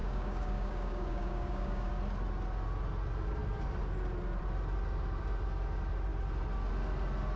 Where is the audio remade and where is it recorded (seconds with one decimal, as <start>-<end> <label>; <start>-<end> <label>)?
0.0-2.0 remade; 2.0-7.4 recorded